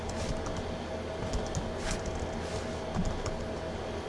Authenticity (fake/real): real